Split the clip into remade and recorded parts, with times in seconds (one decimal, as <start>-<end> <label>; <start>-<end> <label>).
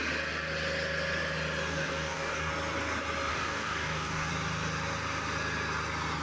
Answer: 0.0-1.7 recorded; 1.7-2.5 remade; 2.5-3.3 recorded; 3.3-4.3 remade; 4.3-6.2 recorded